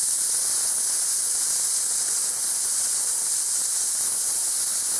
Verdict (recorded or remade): recorded